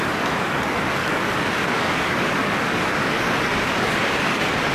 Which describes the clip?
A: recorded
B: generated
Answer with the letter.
B